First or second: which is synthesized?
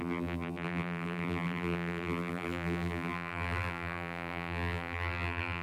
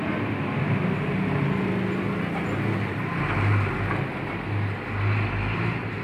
first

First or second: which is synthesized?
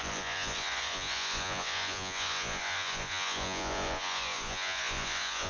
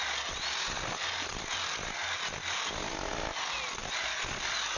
first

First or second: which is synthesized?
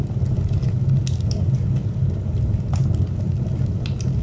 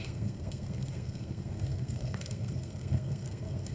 second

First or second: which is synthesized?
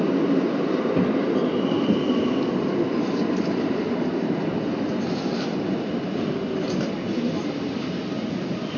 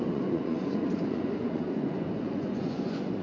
second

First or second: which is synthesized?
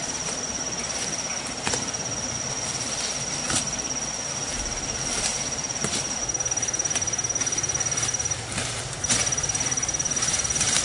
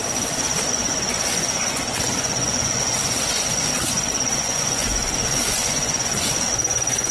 second